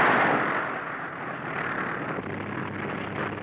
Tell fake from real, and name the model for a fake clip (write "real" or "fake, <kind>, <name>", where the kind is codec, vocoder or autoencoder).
real